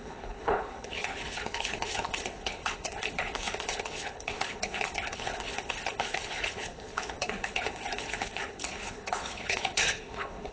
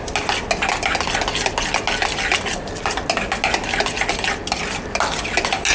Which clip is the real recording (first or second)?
second